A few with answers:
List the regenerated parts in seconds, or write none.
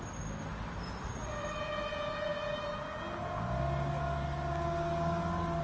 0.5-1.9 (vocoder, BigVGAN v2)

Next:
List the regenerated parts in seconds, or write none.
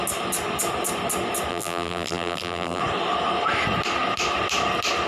1.5-2.8 (vocoder, BigVGAN v2)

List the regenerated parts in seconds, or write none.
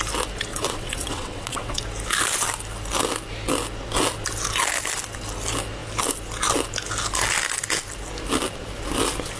0.5-1.8 (vocoder, WaveNeXt)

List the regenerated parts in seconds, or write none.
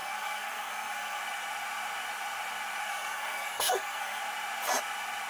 0.0-1.2 (codec, SNAC); 2.8-4.2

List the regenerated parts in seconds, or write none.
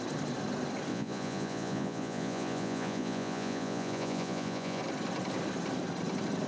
0.9-4.8 (vocoder, Vocos)